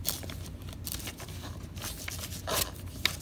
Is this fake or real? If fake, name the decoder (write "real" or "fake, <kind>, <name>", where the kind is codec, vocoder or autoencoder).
real